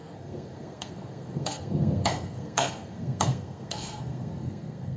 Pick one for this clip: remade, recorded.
remade